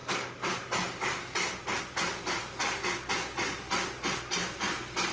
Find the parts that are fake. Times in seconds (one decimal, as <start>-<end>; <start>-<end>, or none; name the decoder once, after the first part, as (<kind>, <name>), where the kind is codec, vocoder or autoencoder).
none